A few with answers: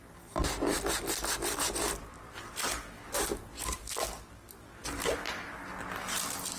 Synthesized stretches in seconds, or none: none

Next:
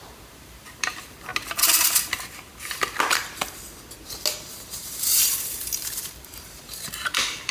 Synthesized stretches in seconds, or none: 0.0-1.3 (vocoder, BigVGAN v2); 4.4-7.5

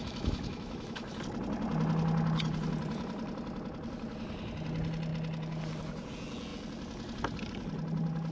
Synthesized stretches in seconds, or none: 0.0-1.2 (autoencoder, DAC-VAE)

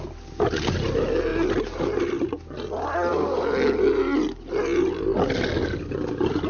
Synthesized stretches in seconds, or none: none

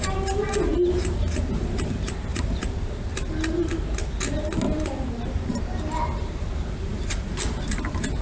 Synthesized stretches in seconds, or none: none

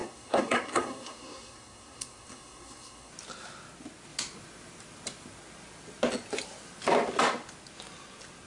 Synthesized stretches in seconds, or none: 0.0-3.1 (codec, SNAC)

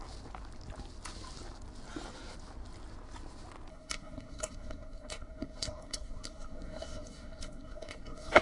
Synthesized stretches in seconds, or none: 3.7-8.4 (codec, SNAC)

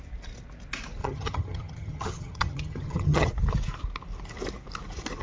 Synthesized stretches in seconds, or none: 1.0-3.3 (vocoder, HiFi-GAN)